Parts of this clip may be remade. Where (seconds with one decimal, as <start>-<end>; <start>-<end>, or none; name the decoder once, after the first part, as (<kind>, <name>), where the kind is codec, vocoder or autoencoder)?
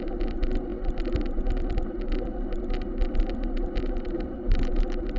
none